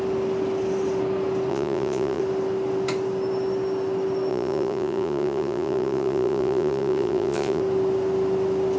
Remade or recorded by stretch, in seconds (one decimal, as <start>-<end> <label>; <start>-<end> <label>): 0.0-1.5 recorded; 1.5-2.2 remade; 2.2-4.3 recorded; 4.3-7.6 remade; 7.6-8.8 recorded